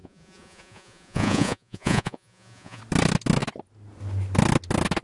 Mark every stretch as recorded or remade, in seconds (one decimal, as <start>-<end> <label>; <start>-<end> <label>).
0.0-2.8 remade; 2.8-5.0 recorded